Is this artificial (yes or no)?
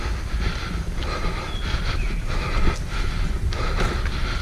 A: no